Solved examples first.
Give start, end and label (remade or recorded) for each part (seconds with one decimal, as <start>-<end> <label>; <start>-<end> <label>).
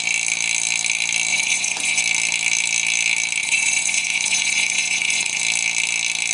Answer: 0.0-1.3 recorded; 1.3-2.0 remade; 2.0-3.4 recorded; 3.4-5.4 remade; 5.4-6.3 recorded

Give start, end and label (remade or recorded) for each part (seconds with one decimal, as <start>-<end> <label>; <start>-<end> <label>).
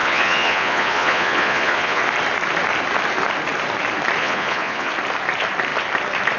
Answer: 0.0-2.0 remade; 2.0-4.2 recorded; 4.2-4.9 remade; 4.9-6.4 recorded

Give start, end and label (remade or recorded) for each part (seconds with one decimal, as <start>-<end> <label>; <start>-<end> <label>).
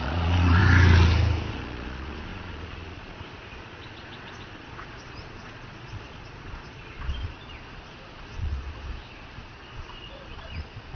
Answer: 0.0-0.6 remade; 0.6-1.5 recorded; 1.5-10.9 remade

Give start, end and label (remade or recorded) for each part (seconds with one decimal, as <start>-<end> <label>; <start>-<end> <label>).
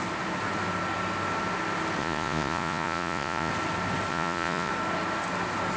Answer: 0.0-2.0 recorded; 2.0-3.5 remade; 3.5-4.1 recorded; 4.1-4.7 remade; 4.7-5.8 recorded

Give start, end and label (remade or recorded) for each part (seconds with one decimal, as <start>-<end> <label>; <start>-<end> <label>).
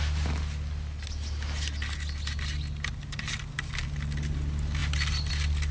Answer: 0.0-5.7 recorded